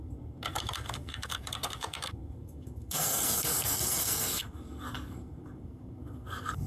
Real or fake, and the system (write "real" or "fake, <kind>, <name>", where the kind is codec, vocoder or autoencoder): fake, codec, SNAC